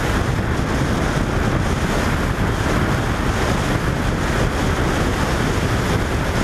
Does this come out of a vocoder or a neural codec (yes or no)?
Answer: no